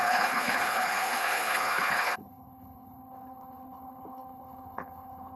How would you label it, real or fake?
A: fake